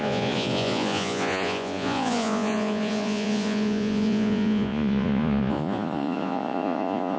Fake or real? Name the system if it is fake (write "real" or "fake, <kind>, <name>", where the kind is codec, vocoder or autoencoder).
fake, vocoder, Vocos